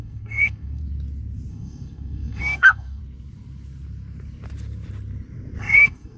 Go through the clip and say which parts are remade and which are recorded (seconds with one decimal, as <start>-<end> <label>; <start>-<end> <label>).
0.0-0.8 remade; 0.8-1.5 recorded; 1.5-3.0 remade; 3.0-5.6 recorded; 5.6-6.2 remade